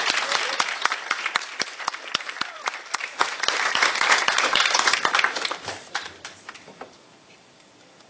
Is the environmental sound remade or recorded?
remade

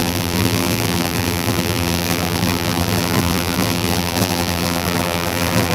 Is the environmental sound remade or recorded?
remade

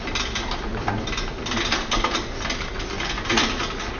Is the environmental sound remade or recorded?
recorded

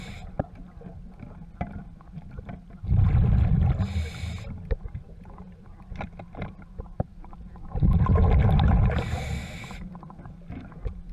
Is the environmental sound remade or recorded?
recorded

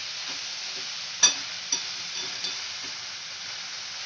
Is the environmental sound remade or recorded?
recorded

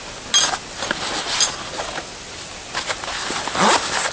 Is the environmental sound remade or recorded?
recorded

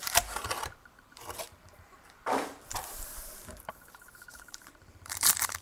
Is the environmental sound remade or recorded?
remade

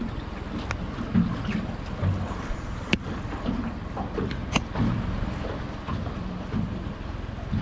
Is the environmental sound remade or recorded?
recorded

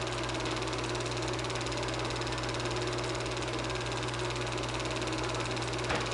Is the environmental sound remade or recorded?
recorded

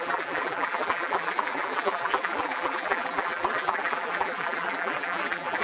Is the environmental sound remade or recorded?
remade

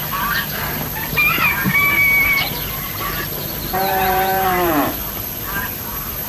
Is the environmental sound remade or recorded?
remade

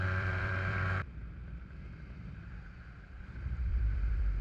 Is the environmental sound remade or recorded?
remade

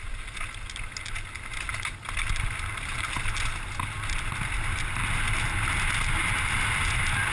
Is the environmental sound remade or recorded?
recorded